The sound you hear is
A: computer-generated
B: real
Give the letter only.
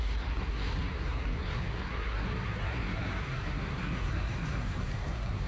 A